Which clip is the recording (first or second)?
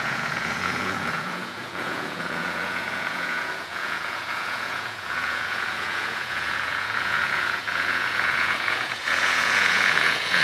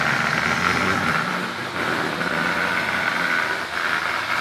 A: second